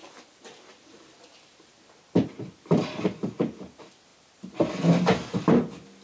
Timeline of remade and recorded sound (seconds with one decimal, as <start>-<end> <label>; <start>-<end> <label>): 0.0-6.0 recorded